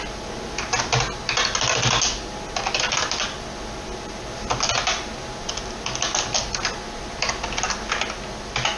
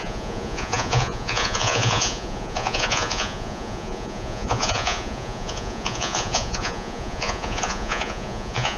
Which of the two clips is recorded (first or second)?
first